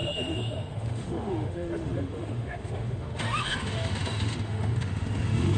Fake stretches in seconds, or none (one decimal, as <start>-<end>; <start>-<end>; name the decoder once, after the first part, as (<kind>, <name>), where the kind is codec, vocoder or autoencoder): 0.0-5.6 (autoencoder, DAC-VAE)